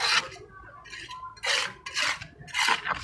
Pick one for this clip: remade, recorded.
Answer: recorded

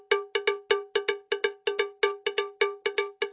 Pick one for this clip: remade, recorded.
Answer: recorded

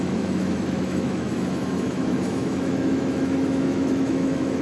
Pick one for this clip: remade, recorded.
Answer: remade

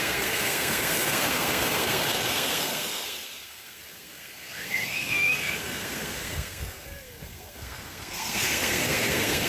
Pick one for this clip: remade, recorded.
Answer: remade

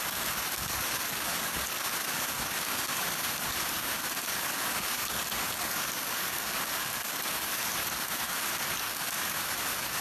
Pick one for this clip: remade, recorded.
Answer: remade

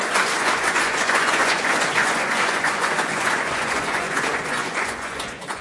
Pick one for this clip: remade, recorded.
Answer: remade